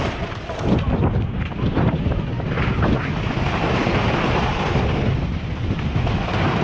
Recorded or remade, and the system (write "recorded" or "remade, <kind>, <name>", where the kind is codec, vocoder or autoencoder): recorded